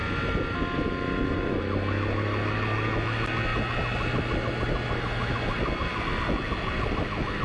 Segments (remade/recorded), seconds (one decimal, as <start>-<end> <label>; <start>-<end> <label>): 0.0-7.4 recorded